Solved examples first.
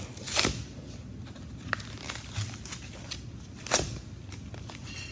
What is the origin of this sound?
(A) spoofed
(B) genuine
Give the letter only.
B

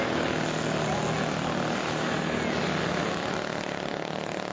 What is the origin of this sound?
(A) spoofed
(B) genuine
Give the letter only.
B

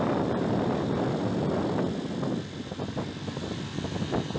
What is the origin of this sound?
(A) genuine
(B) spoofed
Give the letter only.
A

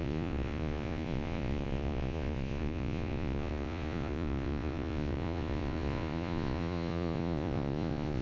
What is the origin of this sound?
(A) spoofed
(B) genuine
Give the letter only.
A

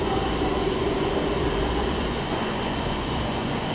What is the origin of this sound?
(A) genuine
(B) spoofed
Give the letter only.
B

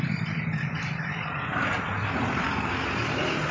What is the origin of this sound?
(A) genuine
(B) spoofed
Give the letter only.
A